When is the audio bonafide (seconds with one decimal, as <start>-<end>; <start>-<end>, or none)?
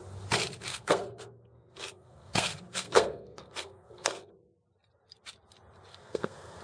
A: 0.0-0.7; 4.3-5.9